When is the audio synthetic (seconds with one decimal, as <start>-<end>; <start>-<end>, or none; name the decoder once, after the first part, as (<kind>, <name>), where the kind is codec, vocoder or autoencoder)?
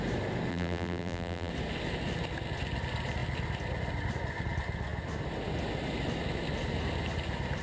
0.5-1.5 (vocoder, BigVGAN v2)